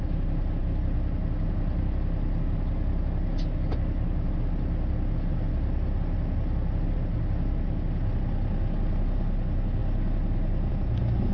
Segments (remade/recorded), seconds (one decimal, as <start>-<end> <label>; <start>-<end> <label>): 0.0-11.3 recorded